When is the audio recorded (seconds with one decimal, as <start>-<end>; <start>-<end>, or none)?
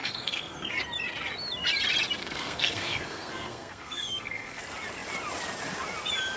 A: 0.7-2.2; 4.6-6.4